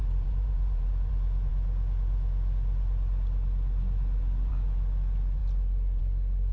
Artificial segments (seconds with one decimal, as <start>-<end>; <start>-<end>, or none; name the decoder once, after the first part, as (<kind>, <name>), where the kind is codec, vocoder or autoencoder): 0.0-1.1 (vocoder, BigVGAN v2)

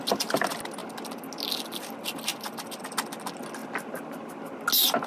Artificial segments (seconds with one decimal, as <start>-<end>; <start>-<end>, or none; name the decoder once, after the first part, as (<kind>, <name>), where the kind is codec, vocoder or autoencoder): none